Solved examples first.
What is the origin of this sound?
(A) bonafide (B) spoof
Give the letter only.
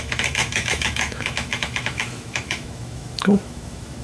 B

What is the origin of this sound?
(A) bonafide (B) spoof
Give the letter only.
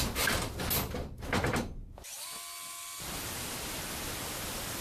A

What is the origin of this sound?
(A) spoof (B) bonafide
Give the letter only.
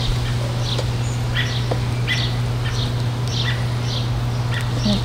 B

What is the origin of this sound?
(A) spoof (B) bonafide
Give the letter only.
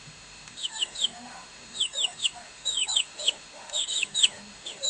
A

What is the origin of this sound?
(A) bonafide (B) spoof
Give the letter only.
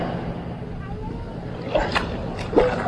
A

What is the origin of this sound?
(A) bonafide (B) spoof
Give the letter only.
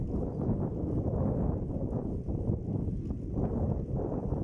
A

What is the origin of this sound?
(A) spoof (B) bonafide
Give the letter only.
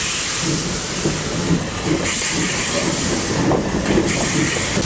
B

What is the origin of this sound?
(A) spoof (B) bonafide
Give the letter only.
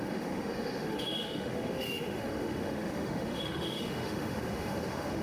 A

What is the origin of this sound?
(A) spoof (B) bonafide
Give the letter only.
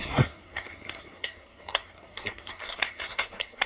A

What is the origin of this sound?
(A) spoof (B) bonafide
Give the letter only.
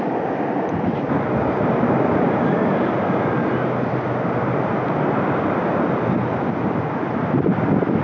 B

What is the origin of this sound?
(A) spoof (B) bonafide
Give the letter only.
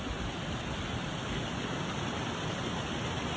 B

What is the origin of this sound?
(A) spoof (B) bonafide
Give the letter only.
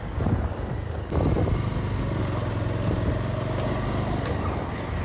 B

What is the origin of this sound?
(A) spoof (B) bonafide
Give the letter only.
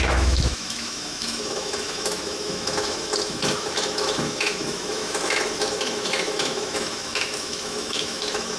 A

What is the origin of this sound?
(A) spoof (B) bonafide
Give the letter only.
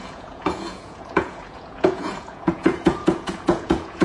A